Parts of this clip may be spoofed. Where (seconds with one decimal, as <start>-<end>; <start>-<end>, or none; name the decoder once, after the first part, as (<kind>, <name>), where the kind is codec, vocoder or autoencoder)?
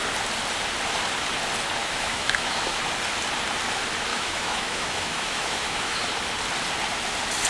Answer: 1.8-2.8 (autoencoder, DAC-VAE); 4.1-6.0